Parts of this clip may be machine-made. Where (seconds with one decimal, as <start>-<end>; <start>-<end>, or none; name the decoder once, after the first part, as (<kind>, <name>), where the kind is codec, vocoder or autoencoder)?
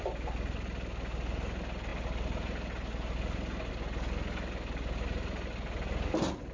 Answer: none